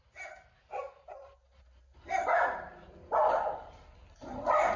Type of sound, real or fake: real